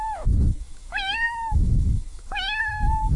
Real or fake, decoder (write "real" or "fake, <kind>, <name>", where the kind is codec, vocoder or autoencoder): fake, autoencoder, DAC-VAE